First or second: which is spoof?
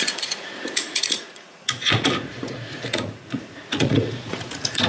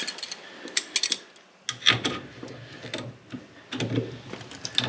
first